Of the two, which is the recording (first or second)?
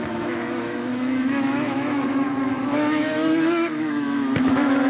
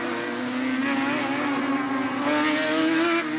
second